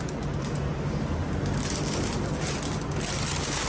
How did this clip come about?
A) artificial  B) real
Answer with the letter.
B